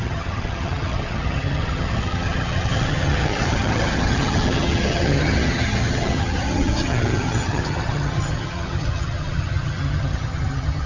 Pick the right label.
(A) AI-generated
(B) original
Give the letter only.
A